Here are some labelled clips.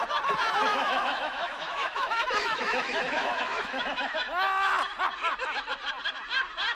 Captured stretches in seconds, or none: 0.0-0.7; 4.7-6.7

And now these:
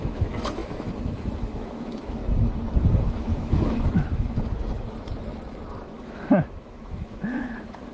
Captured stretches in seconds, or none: 2.2-3.1